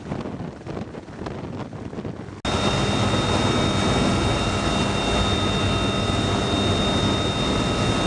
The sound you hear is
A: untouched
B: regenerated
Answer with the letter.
A